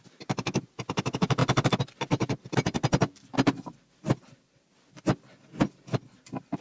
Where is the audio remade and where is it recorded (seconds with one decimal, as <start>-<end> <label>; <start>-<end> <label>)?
0.0-6.6 recorded